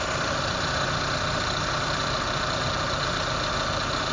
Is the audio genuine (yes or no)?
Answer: yes